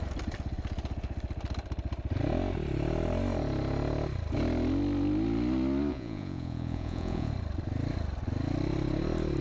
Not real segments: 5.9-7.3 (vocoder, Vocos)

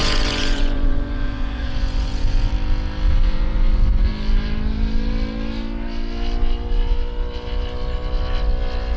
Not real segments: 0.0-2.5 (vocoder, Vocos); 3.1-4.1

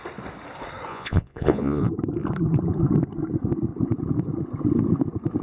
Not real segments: 0.9-1.8 (vocoder, Vocos)

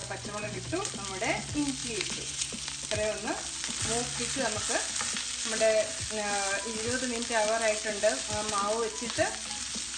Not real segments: 0.0-0.9 (vocoder, Vocos); 1.8-2.5

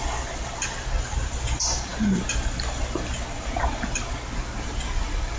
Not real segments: none

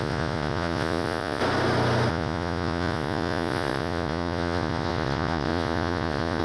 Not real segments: 0.0-1.4 (vocoder, Vocos); 2.1-6.4

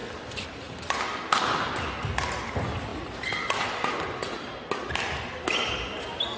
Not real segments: none